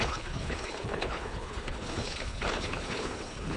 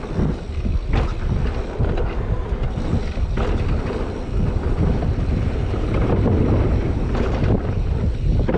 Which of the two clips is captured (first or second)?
second